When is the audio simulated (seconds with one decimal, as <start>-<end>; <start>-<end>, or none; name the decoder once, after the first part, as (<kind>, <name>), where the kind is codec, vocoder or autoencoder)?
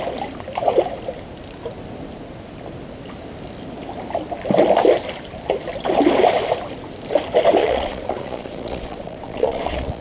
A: 7.6-10.0 (vocoder, Vocos)